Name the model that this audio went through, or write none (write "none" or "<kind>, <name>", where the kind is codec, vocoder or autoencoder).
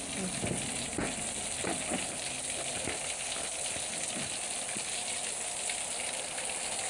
none